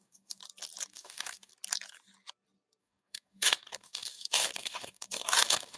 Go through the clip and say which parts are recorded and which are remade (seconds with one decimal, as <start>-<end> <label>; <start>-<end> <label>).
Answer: 0.0-0.4 remade; 0.4-0.9 recorded; 0.9-1.5 remade; 1.5-2.8 recorded; 2.8-5.8 remade